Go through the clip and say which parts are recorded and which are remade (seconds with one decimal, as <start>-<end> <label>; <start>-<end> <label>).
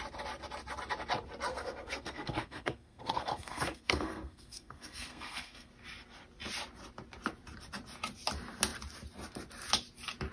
0.0-1.5 recorded; 1.5-5.7 remade; 5.7-10.3 recorded